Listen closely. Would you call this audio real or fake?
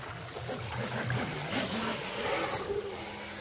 real